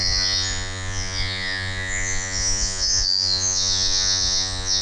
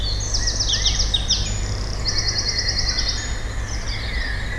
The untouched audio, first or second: second